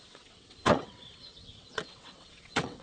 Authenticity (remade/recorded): remade